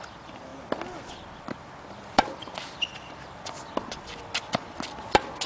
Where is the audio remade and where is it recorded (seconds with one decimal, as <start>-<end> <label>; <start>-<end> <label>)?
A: 0.0-5.5 recorded